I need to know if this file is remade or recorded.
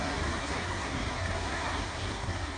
remade